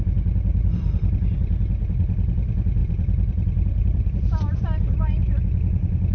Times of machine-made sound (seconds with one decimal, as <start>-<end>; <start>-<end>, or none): 0.5-1.5; 2.8-5.4